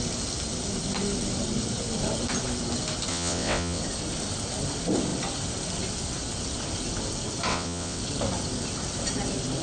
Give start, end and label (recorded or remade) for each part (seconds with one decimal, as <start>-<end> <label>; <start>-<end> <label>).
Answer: 0.0-3.1 recorded; 3.1-3.8 remade; 3.8-7.5 recorded; 7.5-8.0 remade; 8.0-9.6 recorded